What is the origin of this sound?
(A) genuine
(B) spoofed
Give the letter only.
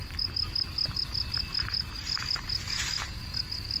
A